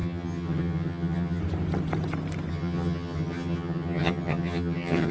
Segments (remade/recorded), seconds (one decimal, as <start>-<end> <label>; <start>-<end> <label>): 0.0-1.4 remade; 1.4-2.5 recorded; 2.5-5.1 remade